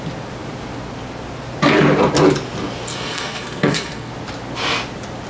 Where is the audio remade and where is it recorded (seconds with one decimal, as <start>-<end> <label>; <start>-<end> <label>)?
0.0-2.9 recorded; 2.9-4.1 remade; 4.1-5.3 recorded